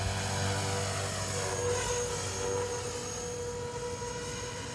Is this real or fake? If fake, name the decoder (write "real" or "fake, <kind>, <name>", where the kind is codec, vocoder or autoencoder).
real